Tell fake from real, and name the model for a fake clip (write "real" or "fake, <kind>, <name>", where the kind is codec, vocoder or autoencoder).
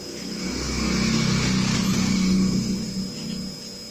real